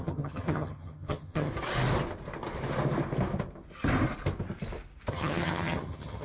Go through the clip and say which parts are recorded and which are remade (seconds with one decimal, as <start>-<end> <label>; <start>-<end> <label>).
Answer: 0.0-1.5 remade; 1.5-5.1 recorded; 5.1-6.2 remade